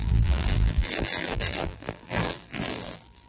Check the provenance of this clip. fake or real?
fake